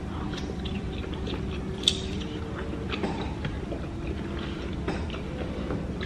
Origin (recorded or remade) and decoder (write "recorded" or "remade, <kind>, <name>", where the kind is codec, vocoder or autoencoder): remade, vocoder, BigVGAN v2